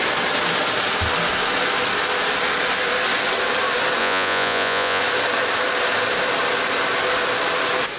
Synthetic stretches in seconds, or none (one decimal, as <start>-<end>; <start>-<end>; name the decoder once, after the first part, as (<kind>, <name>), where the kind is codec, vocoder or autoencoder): 4.0-5.0 (vocoder, Vocos)